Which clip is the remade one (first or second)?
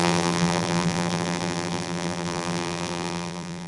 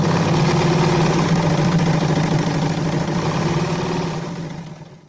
first